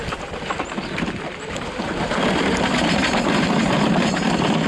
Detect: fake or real fake